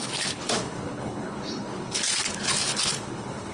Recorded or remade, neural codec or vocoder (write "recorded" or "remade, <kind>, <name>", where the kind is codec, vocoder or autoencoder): remade, codec, HILCodec